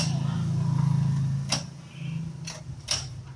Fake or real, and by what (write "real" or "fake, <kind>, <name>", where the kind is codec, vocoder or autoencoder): real